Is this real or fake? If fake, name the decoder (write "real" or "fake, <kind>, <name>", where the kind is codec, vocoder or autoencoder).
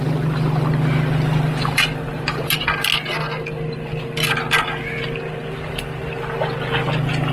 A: real